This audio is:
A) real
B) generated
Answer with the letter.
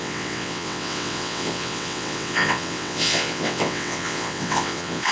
B